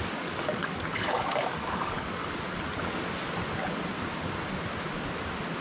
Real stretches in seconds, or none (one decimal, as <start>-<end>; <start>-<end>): 2.2-5.6